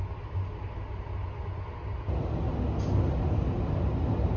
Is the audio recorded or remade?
recorded